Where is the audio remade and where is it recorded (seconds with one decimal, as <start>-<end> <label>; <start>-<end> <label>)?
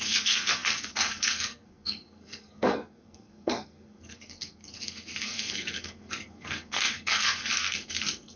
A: 0.0-8.4 remade